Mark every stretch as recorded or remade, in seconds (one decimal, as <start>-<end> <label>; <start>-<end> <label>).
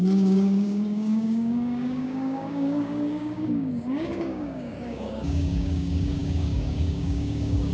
0.0-7.7 remade